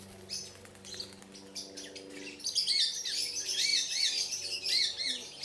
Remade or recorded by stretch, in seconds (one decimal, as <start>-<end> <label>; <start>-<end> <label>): 0.0-5.4 recorded